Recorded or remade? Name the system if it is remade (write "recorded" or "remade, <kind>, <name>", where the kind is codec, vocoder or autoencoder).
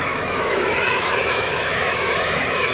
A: remade, autoencoder, DAC-VAE